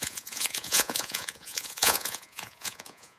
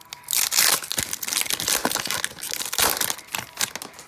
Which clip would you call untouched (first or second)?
second